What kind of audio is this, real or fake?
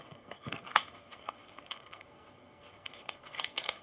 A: fake